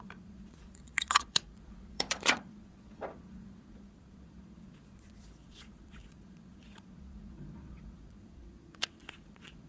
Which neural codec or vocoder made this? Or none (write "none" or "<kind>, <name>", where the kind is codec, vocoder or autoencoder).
vocoder, Vocos